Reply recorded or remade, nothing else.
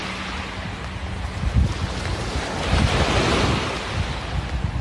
recorded